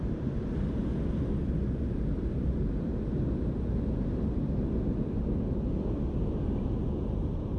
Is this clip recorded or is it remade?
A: recorded